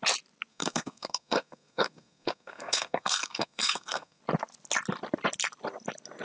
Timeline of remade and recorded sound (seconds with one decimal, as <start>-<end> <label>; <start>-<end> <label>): 0.0-0.5 recorded; 0.5-4.2 remade; 4.2-6.2 recorded